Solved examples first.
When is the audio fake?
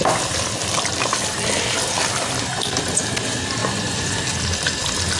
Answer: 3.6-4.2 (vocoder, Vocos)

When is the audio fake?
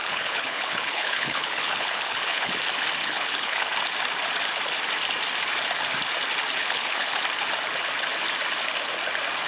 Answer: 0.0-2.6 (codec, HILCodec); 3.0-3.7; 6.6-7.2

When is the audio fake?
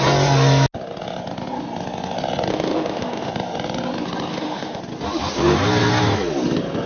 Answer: 2.5-3.3 (autoencoder, DAC-VAE); 4.3-4.8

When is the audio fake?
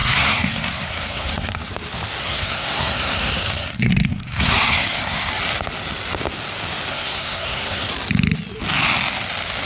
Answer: 0.0-1.7 (codec, SNAC); 2.2-5.3; 6.9-7.9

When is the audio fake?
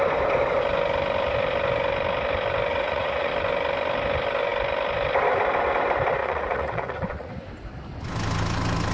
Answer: 2.7-3.3 (vocoder, Vocos); 6.2-7.3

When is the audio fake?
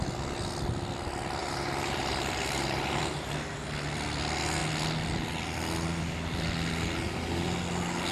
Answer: 1.4-3.0 (vocoder, BigVGAN v2)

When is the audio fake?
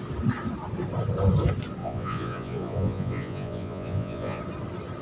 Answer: 1.8-4.4 (vocoder, Vocos)